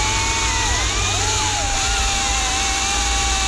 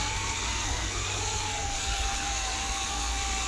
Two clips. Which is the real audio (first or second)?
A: first